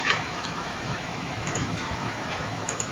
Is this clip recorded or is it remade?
remade